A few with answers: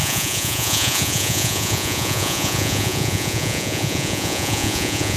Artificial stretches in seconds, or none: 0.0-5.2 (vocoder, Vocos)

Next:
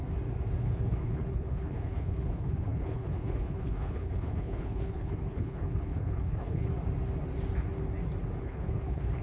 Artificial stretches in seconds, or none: 0.6-6.7 (codec, HILCodec); 8.4-9.2